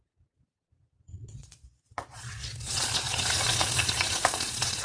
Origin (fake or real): fake